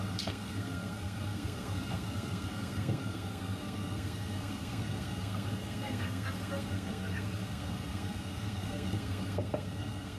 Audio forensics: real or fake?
fake